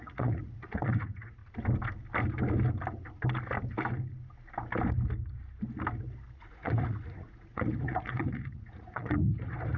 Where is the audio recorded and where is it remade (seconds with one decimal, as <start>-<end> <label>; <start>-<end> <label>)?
0.0-1.4 remade; 1.4-6.4 recorded; 6.4-9.8 remade

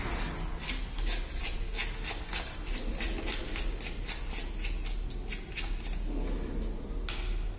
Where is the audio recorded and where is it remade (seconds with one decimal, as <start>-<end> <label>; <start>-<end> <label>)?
0.0-7.6 recorded

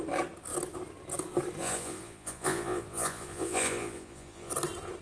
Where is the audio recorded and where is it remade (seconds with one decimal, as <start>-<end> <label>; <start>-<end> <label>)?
0.0-1.6 recorded; 1.6-4.5 remade; 4.5-5.0 recorded

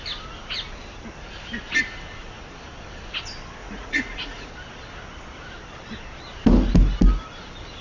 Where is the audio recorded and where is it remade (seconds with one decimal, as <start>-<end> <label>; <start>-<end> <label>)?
0.0-3.6 recorded; 3.6-4.5 remade; 4.5-7.8 recorded

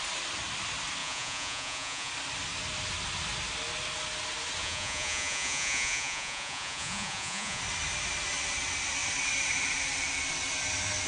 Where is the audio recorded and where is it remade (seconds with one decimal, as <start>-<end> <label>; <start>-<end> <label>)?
0.0-1.0 recorded; 1.0-2.1 remade; 2.1-4.6 recorded; 4.6-7.6 remade; 7.6-11.1 recorded